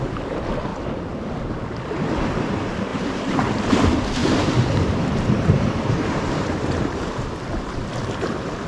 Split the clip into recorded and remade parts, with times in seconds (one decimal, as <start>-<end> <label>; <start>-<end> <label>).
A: 0.0-2.9 recorded; 2.9-3.5 remade; 3.5-4.2 recorded; 4.2-7.1 remade; 7.1-8.7 recorded

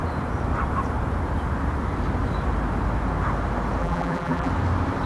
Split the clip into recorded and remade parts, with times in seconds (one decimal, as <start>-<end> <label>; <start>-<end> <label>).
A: 0.0-3.8 recorded; 3.8-4.5 remade; 4.5-5.1 recorded

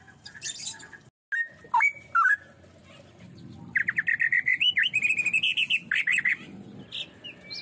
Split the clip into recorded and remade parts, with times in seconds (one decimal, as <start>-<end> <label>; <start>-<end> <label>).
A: 0.0-2.8 recorded; 2.8-3.8 remade; 3.8-7.6 recorded

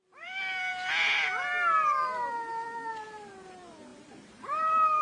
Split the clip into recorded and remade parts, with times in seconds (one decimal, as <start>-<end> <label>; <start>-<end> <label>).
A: 0.0-0.7 remade; 0.7-2.9 recorded; 2.9-5.0 remade

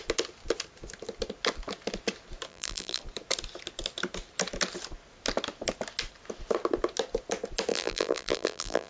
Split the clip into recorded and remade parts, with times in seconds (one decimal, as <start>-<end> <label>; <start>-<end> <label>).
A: 0.0-2.5 recorded; 2.5-3.0 remade; 3.0-7.7 recorded; 7.7-8.9 remade

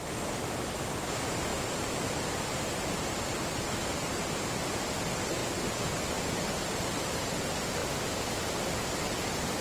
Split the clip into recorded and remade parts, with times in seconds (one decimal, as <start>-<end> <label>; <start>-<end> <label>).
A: 0.0-1.5 recorded; 1.5-4.2 remade; 4.2-5.4 recorded; 5.4-6.4 remade; 6.4-9.6 recorded

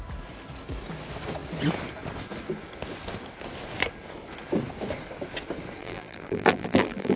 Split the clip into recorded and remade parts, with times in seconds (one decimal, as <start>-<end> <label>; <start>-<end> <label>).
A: 0.0-5.8 recorded; 5.8-7.2 remade

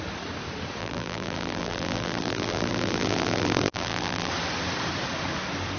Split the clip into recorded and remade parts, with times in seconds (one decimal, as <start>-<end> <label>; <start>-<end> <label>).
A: 0.0-0.8 recorded; 0.8-4.3 remade; 4.3-5.8 recorded